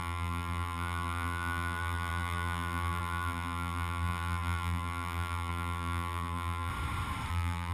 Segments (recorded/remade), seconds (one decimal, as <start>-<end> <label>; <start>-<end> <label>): 0.0-6.7 remade; 6.7-7.3 recorded; 7.3-7.7 remade